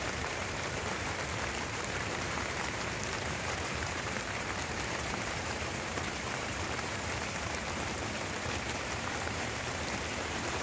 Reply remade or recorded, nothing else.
remade